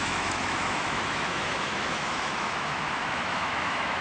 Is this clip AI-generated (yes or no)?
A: yes